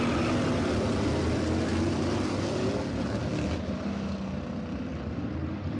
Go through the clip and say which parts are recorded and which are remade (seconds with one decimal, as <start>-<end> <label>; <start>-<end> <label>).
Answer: 0.0-5.8 recorded